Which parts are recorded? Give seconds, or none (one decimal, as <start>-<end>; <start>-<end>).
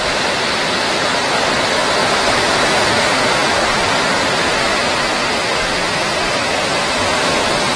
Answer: 0.0-2.0; 2.8-6.4